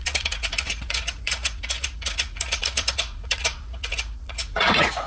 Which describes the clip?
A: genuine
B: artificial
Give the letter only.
B